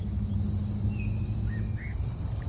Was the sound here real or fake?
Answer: real